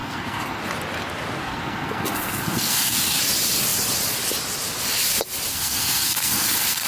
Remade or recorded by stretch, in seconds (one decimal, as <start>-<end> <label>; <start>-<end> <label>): 0.0-0.6 remade; 0.6-1.4 recorded; 1.4-3.2 remade; 3.2-5.5 recorded; 5.5-6.9 remade